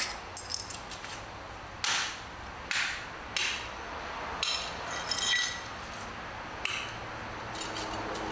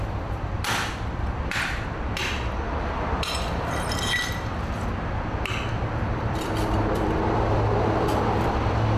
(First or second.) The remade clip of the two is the second